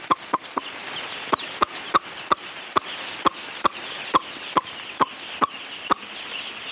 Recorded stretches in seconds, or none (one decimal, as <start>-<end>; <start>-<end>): 0.0-6.7